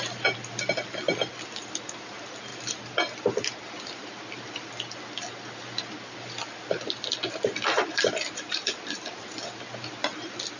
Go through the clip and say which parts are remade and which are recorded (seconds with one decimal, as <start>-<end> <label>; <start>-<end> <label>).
0.0-10.6 remade